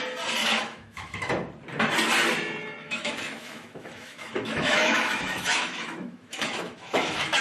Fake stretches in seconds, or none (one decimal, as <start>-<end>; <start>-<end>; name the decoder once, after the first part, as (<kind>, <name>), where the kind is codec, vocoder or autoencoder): 0.4-1.3 (autoencoder, DAC-VAE); 2.8-7.4